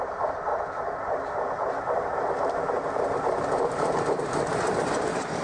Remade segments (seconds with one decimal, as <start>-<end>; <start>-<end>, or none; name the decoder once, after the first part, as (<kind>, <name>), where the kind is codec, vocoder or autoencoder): 0.0-0.5 (vocoder, BigVGAN v2); 2.3-5.4